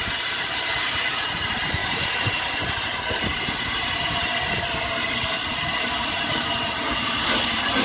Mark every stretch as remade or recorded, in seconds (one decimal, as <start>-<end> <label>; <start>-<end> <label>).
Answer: 0.0-4.3 remade; 4.3-5.5 recorded; 5.5-7.8 remade